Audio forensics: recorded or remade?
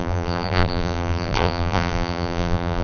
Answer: remade